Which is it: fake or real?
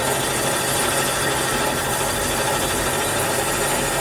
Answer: real